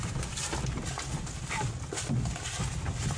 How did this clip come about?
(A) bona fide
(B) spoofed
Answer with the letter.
A